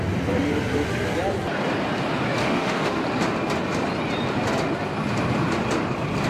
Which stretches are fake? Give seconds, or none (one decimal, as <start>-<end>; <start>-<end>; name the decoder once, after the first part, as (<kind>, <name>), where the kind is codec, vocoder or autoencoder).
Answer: 2.4-3.0 (autoencoder, DAC-VAE)